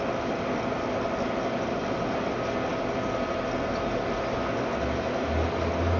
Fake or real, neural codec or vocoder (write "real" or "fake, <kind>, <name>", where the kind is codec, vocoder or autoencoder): real